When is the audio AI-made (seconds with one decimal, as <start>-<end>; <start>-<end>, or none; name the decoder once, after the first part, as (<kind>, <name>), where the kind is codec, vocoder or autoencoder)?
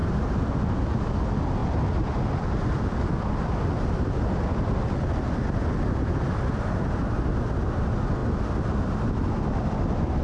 none